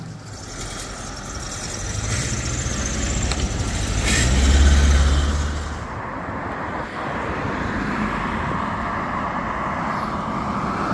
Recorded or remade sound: recorded